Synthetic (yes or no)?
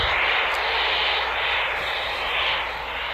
yes